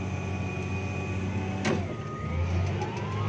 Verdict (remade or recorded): recorded